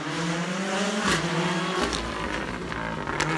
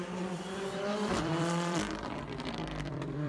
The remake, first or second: second